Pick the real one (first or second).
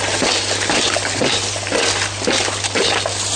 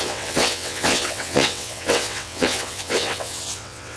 first